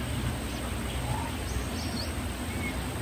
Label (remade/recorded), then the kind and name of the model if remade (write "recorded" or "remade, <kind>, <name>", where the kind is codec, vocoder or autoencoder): recorded